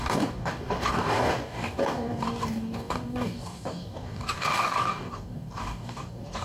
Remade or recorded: remade